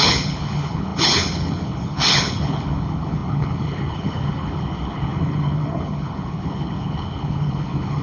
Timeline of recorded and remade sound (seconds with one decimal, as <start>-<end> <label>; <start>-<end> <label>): 0.0-8.0 remade